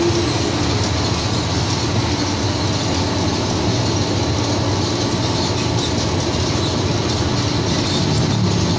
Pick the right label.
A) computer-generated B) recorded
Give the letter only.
B